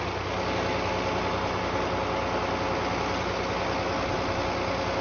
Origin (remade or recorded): recorded